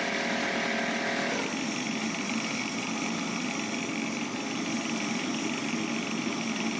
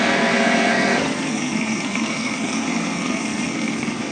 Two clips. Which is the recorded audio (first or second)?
first